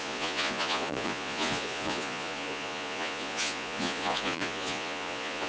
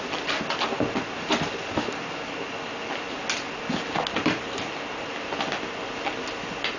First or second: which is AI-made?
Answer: first